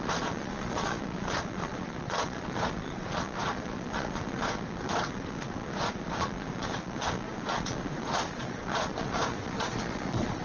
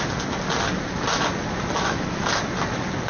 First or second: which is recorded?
second